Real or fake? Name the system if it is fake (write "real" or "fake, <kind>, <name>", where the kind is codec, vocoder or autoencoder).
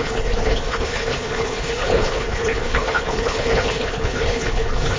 fake, codec, HILCodec